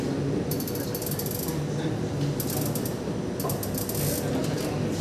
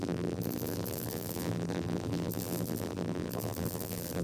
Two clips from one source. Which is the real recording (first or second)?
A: first